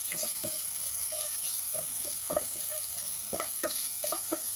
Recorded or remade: remade